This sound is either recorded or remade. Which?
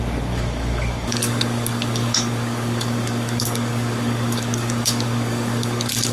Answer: remade